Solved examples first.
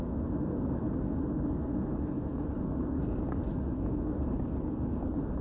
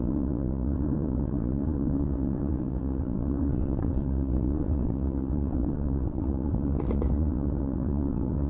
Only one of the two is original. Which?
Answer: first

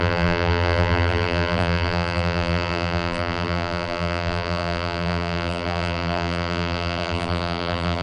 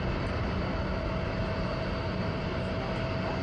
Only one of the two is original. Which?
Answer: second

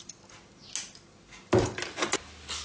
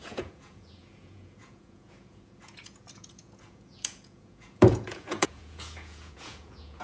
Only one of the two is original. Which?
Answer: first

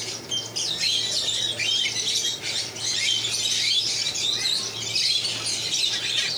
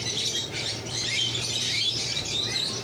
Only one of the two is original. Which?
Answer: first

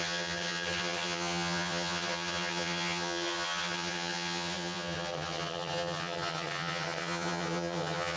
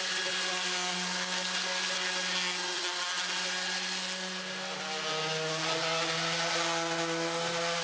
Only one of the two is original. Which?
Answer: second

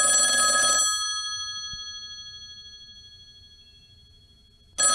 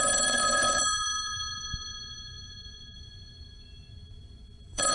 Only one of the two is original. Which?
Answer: first